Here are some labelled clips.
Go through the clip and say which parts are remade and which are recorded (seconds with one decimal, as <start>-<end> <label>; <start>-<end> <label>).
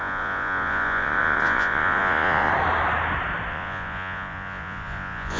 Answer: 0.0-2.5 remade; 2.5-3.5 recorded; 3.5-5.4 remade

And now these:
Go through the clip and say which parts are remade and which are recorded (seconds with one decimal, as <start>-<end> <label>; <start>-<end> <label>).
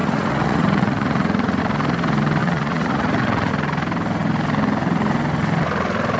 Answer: 0.0-1.6 remade; 1.6-2.4 recorded; 2.4-3.5 remade; 3.5-6.2 recorded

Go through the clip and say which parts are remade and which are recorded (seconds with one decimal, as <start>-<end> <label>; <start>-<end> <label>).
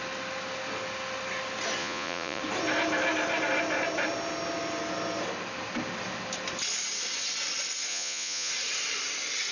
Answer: 0.0-1.8 recorded; 1.8-2.4 remade; 2.4-7.9 recorded; 7.9-8.5 remade; 8.5-9.5 recorded